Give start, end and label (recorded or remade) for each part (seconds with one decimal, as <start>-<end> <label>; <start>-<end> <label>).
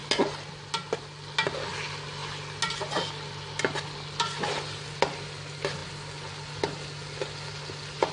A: 0.0-8.1 recorded